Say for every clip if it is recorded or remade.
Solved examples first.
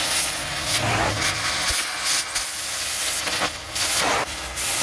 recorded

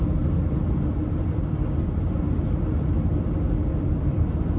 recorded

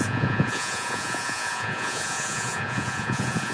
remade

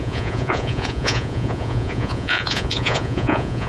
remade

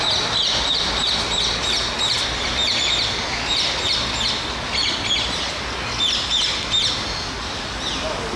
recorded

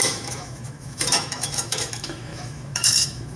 remade